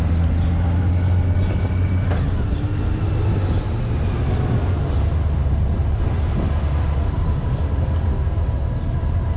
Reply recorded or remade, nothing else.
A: recorded